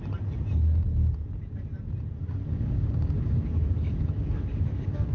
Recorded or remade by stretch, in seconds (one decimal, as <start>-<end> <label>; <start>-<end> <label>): 0.0-2.2 recorded; 2.2-5.1 remade